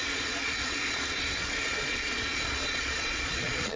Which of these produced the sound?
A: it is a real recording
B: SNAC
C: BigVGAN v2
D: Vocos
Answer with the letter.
D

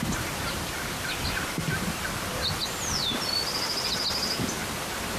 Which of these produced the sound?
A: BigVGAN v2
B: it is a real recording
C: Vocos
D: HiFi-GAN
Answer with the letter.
B